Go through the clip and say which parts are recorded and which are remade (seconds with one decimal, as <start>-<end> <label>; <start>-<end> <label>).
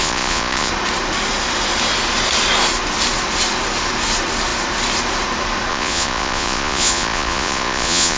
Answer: 0.0-0.7 remade; 0.7-5.7 recorded; 5.7-8.2 remade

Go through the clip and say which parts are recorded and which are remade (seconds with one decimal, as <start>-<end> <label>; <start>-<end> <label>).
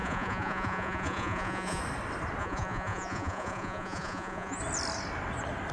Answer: 0.0-1.8 remade; 1.8-2.4 recorded; 2.4-4.6 remade; 4.6-5.7 recorded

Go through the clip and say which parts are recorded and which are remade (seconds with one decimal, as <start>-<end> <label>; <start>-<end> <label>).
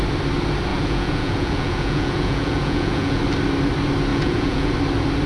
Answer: 0.0-0.7 recorded; 0.7-3.2 remade; 3.2-4.1 recorded; 4.1-4.7 remade; 4.7-5.3 recorded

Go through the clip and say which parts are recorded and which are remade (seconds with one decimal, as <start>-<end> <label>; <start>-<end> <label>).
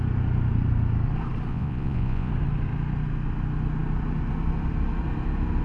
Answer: 0.0-1.5 recorded; 1.5-2.3 remade; 2.3-5.6 recorded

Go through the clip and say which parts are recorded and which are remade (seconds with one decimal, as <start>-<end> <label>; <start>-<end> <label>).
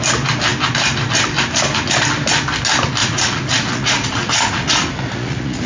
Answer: 0.0-3.0 recorded; 3.0-5.7 remade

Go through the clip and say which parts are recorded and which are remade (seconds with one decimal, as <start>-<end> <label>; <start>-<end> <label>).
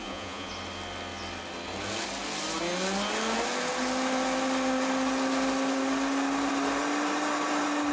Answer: 0.0-0.5 remade; 0.5-7.9 recorded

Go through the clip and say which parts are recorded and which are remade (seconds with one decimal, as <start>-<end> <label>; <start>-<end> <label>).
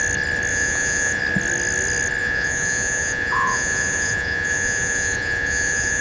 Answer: 0.0-0.5 recorded; 0.5-1.2 remade; 1.2-2.2 recorded; 2.2-6.0 remade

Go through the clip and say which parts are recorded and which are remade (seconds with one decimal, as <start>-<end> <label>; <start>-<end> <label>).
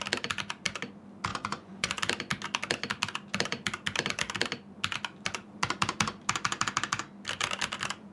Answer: 0.0-1.3 recorded; 1.3-1.9 remade; 1.9-8.1 recorded